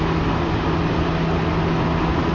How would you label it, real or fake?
real